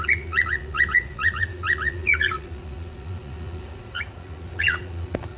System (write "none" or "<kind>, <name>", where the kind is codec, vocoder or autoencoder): vocoder, Vocos